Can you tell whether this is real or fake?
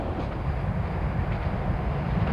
real